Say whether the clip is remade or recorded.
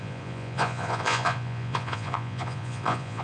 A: remade